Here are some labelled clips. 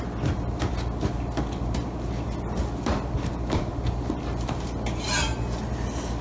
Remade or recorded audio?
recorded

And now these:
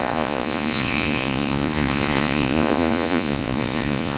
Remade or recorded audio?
remade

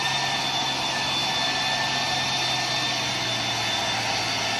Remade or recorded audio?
recorded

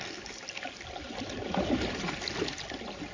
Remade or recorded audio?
recorded